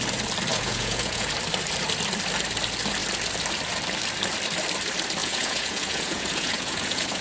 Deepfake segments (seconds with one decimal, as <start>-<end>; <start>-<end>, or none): 0.5-1.3; 5.2-7.2